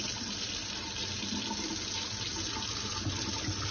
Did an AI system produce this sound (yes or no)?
no